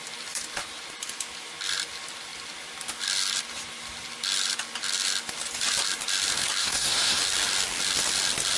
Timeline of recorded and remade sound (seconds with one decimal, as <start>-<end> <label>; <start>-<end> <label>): 0.0-6.6 recorded; 6.6-7.2 remade; 7.2-8.6 recorded